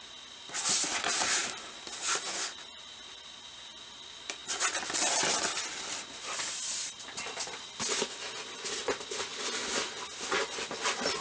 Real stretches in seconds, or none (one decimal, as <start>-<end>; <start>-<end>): 0.0-11.2